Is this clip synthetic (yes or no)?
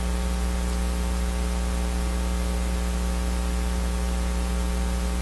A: no